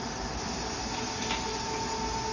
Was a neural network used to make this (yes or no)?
no